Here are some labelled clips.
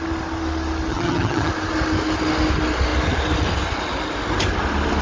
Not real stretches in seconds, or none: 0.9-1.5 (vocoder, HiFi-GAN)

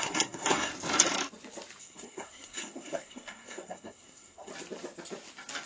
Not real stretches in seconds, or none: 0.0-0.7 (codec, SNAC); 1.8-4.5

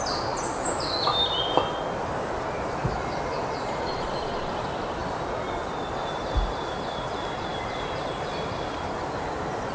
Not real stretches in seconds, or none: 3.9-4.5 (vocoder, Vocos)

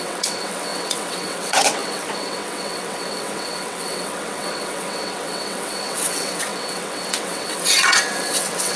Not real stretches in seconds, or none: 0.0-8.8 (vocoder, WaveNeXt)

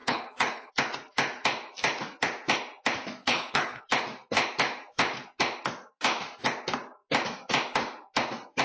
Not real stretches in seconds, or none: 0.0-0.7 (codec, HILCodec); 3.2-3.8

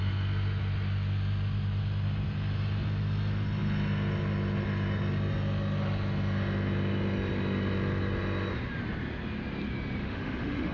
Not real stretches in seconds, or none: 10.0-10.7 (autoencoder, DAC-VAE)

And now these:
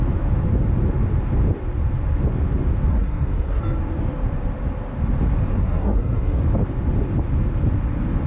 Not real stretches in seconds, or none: 2.9-3.6 (codec, SNAC); 5.5-6.4

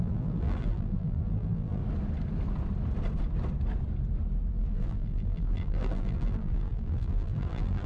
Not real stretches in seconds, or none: 0.0-1.8 (vocoder, BigVGAN v2); 4.5-7.9